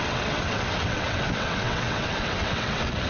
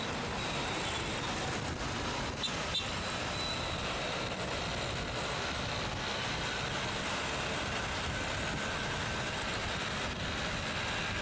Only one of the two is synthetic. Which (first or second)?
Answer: first